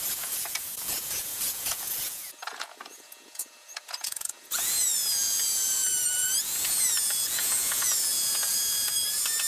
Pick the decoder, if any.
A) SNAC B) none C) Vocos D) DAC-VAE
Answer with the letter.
C